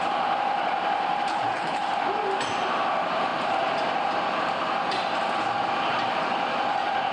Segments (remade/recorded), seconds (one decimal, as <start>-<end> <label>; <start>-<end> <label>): 0.0-1.3 recorded; 1.3-1.8 remade; 1.8-7.1 recorded